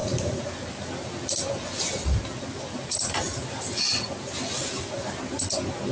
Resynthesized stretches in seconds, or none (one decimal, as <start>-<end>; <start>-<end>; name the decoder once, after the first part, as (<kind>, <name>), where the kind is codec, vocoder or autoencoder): 0.0-3.5 (vocoder, BigVGAN v2)